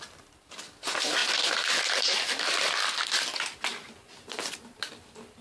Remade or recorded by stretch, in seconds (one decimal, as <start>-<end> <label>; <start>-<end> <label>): 0.0-5.4 recorded